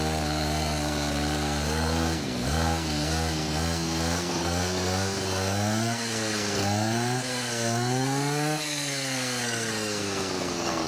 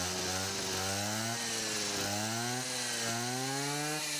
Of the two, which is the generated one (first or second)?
first